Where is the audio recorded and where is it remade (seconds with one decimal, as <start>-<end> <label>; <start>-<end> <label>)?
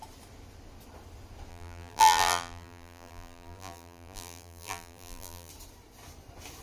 0.0-1.5 recorded; 1.5-5.5 remade; 5.5-6.6 recorded